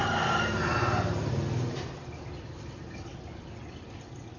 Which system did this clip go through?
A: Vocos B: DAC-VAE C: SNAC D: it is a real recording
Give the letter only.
D